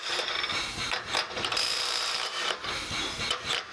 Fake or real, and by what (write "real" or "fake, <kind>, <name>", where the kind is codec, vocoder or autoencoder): fake, vocoder, BigVGAN v2